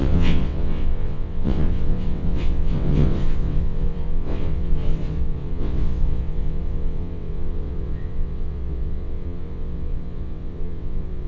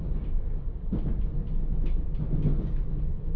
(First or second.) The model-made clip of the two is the first